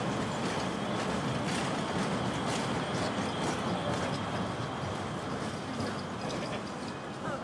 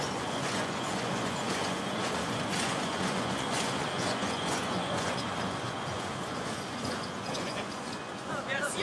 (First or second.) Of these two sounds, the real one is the first